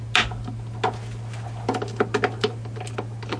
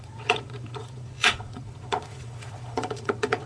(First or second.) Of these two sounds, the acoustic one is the first